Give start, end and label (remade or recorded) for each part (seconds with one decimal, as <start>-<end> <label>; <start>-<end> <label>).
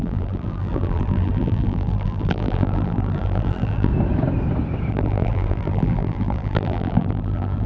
0.0-3.9 remade; 3.9-4.9 recorded; 4.9-7.7 remade